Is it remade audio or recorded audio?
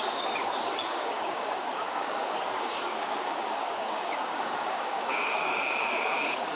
remade